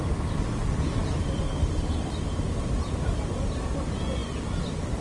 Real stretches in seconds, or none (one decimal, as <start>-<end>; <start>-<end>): 0.0-5.0